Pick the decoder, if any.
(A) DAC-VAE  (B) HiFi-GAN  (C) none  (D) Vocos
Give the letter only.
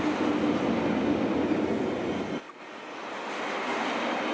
C